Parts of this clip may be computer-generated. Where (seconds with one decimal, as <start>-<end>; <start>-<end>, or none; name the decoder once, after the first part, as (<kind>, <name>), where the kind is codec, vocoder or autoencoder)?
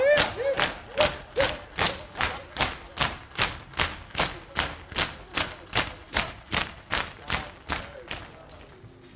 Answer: 6.0-7.2 (vocoder, BigVGAN v2)